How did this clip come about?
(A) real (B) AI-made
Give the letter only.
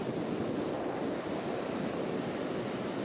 B